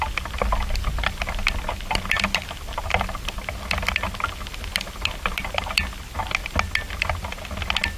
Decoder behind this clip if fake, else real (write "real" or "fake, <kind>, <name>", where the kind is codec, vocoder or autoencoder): real